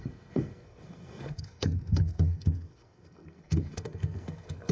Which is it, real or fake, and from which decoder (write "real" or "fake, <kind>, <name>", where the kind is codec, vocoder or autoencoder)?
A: fake, codec, SNAC